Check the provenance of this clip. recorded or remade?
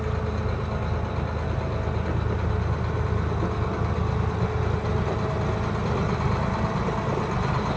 recorded